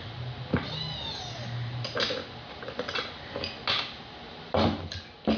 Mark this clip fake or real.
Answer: real